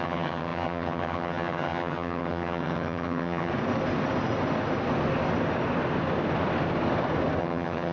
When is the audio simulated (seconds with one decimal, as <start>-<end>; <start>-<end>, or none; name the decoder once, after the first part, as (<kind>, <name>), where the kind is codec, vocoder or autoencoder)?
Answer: 0.0-3.5 (vocoder, HiFi-GAN); 7.4-7.9

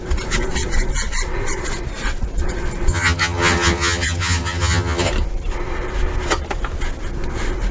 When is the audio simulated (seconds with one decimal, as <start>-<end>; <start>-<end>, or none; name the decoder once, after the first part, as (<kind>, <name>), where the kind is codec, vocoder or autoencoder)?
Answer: 2.9-5.1 (vocoder, HiFi-GAN)

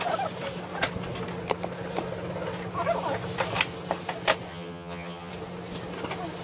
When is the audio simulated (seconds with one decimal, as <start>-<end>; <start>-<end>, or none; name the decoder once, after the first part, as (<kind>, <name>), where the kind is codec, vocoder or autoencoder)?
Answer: 4.5-5.3 (vocoder, HiFi-GAN)

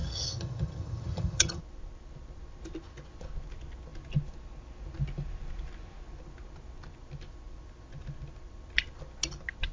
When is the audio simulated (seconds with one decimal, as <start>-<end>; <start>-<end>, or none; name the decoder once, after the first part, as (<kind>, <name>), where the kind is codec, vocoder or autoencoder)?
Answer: 0.0-1.6 (vocoder, HiFi-GAN)

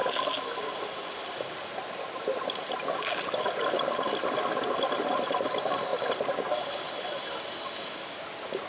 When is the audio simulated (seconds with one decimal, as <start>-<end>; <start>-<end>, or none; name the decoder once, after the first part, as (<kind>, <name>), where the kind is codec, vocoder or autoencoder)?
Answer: none

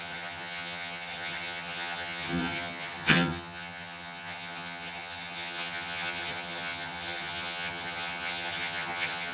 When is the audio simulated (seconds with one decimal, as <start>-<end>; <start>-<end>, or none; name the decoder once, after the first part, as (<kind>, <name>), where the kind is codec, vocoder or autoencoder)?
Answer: 0.0-9.3 (vocoder, HiFi-GAN)

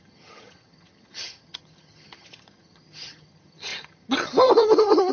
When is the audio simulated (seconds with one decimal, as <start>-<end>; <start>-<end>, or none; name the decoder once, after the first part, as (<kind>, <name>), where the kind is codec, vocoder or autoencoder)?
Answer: 0.0-5.1 (vocoder, HiFi-GAN)